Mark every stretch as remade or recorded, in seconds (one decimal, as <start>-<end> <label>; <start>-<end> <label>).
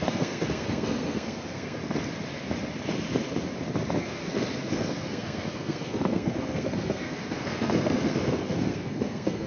0.0-1.8 remade; 1.8-4.0 recorded; 4.0-9.5 remade